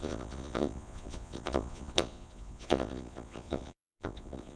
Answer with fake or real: fake